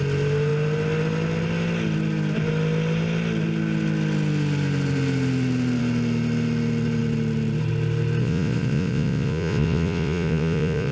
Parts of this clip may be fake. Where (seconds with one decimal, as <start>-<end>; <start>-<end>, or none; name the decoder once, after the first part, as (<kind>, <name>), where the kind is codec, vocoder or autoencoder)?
8.2-10.9 (vocoder, Vocos)